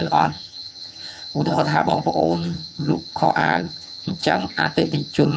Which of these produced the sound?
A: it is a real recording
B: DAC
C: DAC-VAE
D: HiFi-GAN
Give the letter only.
D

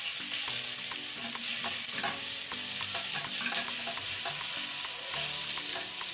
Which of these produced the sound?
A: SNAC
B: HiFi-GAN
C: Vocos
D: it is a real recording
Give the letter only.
D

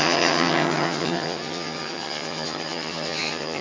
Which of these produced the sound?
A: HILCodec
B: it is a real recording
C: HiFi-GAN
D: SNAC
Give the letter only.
C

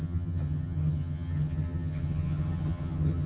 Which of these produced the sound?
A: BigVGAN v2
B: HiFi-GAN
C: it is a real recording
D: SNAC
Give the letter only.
B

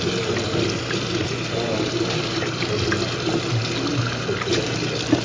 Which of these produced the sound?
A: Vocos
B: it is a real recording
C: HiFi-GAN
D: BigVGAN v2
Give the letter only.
B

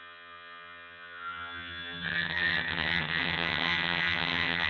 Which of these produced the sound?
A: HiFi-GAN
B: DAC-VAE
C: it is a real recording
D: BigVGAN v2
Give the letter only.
A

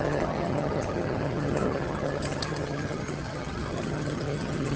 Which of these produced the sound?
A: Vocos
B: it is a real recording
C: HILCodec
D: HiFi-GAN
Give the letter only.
D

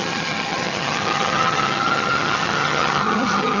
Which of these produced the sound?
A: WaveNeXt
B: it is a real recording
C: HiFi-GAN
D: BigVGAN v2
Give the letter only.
C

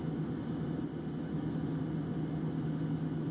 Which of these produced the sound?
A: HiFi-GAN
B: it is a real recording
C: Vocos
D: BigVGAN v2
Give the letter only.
B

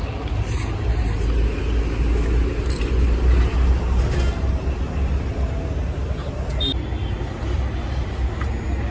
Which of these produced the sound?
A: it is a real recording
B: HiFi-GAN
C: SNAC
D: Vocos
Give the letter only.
A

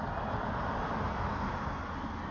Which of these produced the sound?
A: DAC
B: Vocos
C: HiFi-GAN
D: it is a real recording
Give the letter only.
D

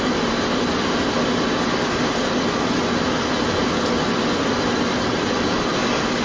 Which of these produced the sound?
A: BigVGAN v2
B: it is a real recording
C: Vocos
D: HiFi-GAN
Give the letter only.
B